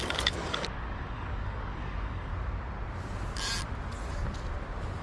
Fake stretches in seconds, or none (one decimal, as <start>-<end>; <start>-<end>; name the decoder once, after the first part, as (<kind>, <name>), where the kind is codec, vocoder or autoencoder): 0.0-2.3 (codec, DAC)